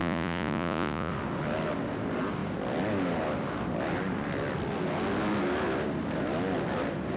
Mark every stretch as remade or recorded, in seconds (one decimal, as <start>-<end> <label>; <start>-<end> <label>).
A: 0.0-1.1 remade; 1.1-7.2 recorded